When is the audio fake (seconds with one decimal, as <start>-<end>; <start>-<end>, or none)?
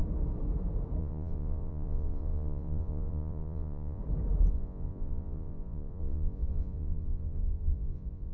1.0-4.0; 4.5-8.3